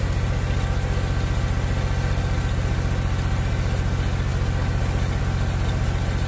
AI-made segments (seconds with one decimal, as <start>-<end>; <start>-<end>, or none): none